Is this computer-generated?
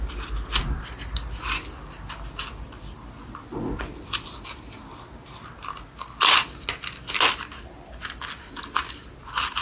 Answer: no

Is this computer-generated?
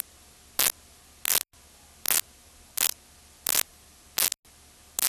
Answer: no